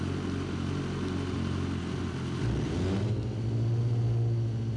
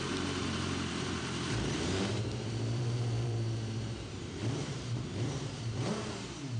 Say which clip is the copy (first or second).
second